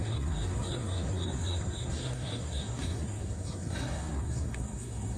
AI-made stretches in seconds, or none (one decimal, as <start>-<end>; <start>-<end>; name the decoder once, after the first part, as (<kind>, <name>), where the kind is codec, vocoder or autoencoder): 0.0-5.2 (codec, SNAC)